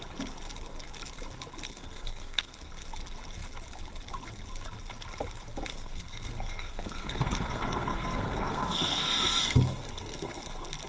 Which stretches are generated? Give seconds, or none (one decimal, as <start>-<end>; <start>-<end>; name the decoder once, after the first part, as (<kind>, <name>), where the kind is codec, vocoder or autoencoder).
1.7-2.7 (codec, SNAC); 5.7-10.5